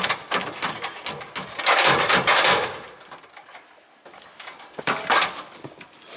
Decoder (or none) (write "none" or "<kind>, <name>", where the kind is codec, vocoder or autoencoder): none